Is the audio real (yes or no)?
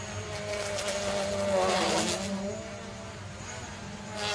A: yes